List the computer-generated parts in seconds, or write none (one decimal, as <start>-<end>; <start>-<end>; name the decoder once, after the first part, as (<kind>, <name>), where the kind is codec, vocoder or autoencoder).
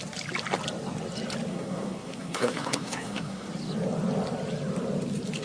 1.5-3.5 (codec, SNAC)